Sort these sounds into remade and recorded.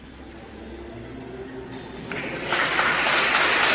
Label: recorded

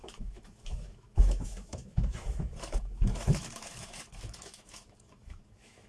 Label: remade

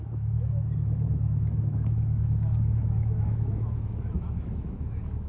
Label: remade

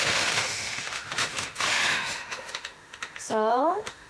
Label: remade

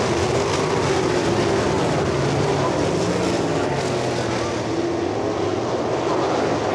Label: recorded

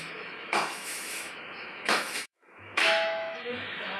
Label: remade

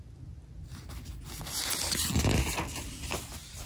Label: recorded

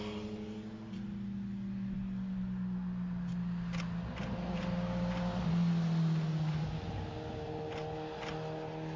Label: recorded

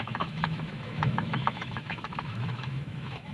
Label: remade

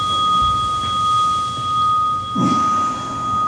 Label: recorded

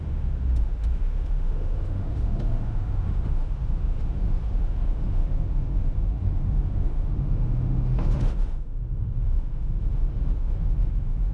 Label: remade